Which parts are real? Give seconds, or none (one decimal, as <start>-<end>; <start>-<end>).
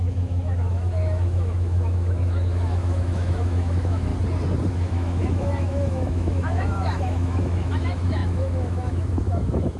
4.1-4.7